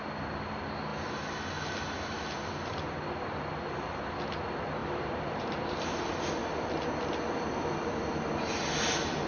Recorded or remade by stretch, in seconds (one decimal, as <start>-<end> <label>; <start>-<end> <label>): 0.0-4.8 recorded; 4.8-6.0 remade; 6.0-9.3 recorded